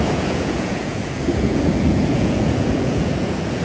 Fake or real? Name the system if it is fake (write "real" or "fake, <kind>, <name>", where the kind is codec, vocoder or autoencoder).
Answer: fake, vocoder, Vocos